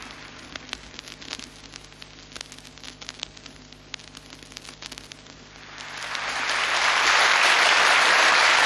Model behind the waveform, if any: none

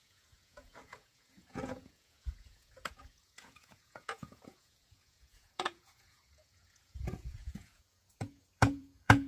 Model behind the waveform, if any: vocoder, Vocos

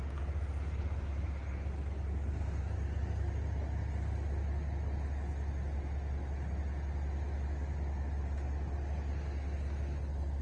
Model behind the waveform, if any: none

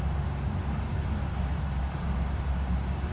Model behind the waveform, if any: none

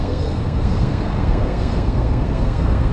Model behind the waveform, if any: codec, SNAC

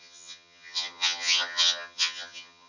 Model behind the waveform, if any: vocoder, HiFi-GAN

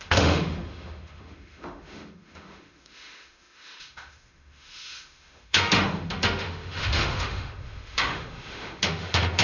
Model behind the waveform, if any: autoencoder, DAC-VAE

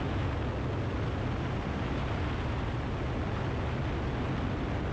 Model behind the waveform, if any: none